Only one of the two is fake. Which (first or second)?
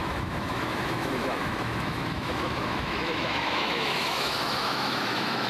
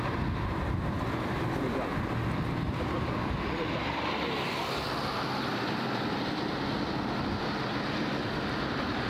first